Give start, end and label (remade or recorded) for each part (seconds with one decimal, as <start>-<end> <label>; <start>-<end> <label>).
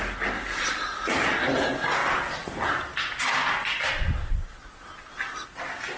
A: 0.0-6.0 recorded